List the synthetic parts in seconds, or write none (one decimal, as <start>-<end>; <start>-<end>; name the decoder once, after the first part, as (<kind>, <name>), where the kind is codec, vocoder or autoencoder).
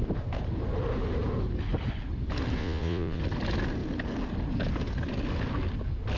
2.6-3.2 (vocoder, Vocos)